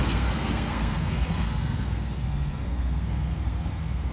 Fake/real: fake